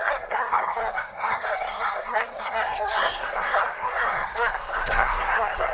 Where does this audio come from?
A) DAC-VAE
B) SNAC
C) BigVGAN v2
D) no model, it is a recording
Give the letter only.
B